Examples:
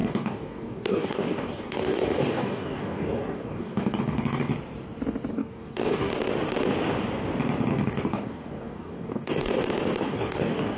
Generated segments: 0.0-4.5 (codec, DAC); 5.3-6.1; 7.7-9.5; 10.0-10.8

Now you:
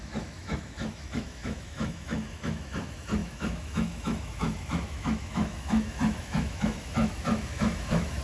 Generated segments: 0.0-8.2 (autoencoder, DAC-VAE)

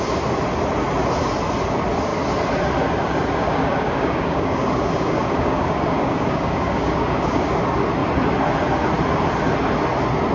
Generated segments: 3.4-7.6 (codec, DAC)

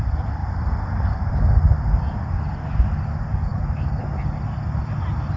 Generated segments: 0.4-1.3 (vocoder, BigVGAN v2); 3.5-4.0

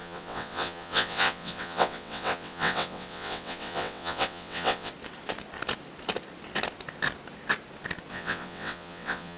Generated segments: 0.0-4.9 (vocoder, WaveNeXt); 8.1-9.4